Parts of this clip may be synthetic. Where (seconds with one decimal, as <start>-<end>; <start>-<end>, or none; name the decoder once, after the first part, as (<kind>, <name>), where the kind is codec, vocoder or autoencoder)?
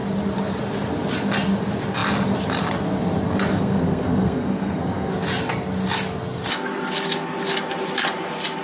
3.5-5.1 (codec, SNAC)